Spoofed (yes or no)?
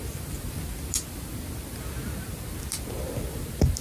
no